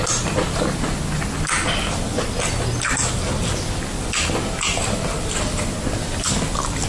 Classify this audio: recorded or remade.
recorded